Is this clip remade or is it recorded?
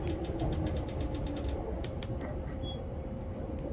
recorded